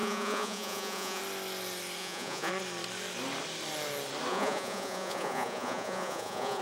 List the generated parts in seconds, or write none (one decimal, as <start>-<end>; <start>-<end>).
0.0-1.2; 2.0-2.5; 4.3-6.6